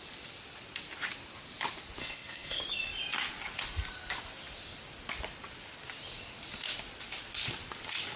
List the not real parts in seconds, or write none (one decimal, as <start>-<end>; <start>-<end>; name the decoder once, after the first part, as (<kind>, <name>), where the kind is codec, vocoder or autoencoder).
2.0-2.6 (codec, SNAC)